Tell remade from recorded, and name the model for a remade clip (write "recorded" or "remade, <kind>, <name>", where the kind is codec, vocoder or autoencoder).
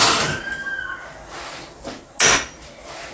recorded